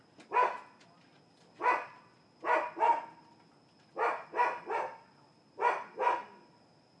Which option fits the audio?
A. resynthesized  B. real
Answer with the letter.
B